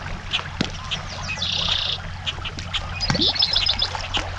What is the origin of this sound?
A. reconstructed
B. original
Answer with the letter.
B